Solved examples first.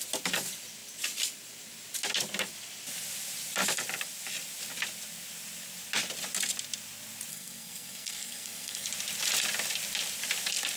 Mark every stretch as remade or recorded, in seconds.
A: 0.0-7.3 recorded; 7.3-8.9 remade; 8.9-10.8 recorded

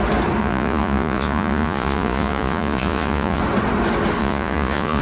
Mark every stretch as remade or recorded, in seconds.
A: 0.0-0.4 recorded; 0.4-3.4 remade; 3.4-4.2 recorded; 4.2-5.0 remade

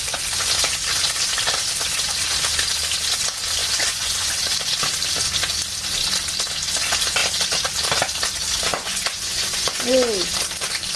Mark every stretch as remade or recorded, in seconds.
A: 0.0-3.6 recorded; 3.6-4.6 remade; 4.6-8.7 recorded; 8.7-9.8 remade; 9.8-11.0 recorded

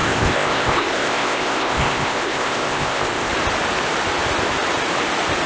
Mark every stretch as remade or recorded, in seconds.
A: 0.0-3.3 remade; 3.3-5.5 recorded

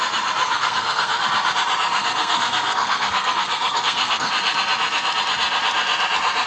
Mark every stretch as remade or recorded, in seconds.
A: 0.0-0.4 recorded; 0.4-1.2 remade; 1.2-2.0 recorded; 2.0-4.3 remade; 4.3-6.5 recorded

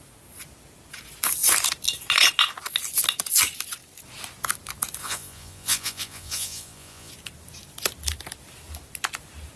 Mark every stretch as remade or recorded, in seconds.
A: 0.0-5.0 recorded; 5.0-7.1 remade; 7.1-9.6 recorded